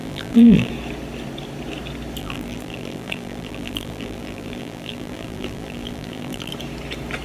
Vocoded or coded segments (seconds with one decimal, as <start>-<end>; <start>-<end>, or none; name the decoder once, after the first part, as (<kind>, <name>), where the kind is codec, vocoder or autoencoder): 0.0-0.7 (vocoder, BigVGAN v2); 2.2-6.5